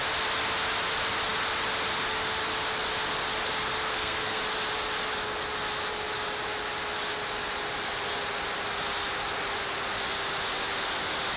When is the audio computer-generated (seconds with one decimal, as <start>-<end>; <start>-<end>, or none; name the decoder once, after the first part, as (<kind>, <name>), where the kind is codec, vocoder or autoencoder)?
3.9-4.4 (codec, SNAC)

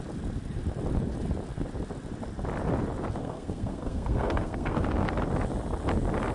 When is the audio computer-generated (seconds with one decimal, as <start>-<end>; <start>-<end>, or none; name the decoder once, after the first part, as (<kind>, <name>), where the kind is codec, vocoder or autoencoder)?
3.2-5.1 (codec, SNAC)

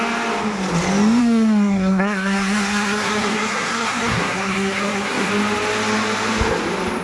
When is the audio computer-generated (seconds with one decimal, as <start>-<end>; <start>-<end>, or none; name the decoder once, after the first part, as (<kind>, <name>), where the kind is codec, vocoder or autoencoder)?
1.2-5.3 (codec, SNAC)

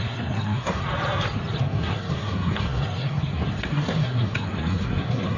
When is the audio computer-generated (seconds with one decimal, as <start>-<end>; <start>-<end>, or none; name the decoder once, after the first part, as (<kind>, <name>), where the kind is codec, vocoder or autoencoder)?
0.0-0.8 (codec, SNAC); 1.6-5.4

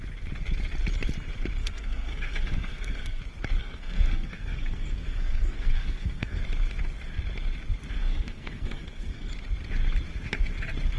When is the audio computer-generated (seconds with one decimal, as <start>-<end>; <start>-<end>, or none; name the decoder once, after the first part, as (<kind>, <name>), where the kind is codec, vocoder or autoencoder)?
1.6-3.2 (codec, SNAC); 3.6-6.4; 8.0-9.3

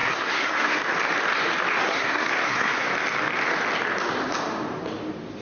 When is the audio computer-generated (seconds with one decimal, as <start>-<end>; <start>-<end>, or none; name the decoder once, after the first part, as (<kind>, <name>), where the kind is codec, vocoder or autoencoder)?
0.0-0.8 (codec, SNAC); 1.8-2.9